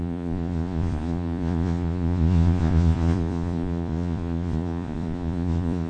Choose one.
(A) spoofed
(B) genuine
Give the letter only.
A